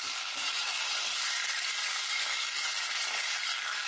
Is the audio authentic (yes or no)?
no